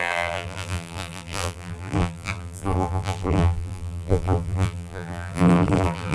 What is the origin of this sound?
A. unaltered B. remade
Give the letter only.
B